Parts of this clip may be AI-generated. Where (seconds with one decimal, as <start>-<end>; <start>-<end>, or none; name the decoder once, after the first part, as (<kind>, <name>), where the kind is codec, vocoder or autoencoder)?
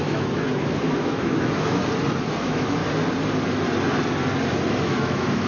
0.0-1.8 (autoencoder, DAC-VAE); 2.4-2.8; 4.7-5.5